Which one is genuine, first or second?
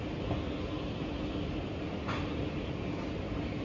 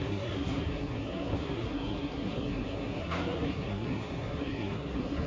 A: first